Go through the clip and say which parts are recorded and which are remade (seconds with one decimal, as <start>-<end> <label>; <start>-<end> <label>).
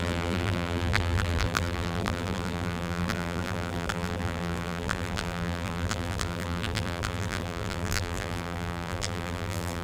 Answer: 0.0-9.8 remade